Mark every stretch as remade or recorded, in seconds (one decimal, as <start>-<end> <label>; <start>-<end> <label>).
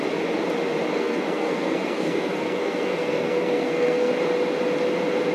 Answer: 0.0-0.9 recorded; 0.9-4.1 remade; 4.1-5.3 recorded